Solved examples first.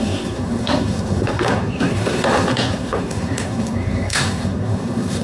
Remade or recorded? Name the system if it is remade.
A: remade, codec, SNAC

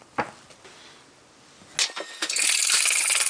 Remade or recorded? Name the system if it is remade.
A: recorded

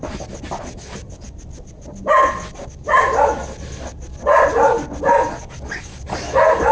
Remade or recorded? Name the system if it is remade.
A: recorded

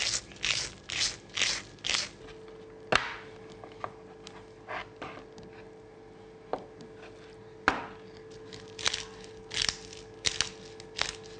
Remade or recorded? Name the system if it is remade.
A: recorded